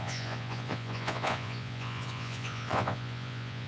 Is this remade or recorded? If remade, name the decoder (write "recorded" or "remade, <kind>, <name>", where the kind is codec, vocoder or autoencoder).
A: remade, vocoder, Vocos